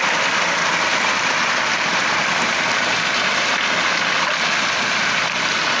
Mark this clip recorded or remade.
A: recorded